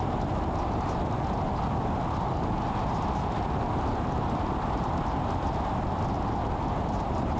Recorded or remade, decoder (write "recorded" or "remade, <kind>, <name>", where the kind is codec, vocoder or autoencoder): recorded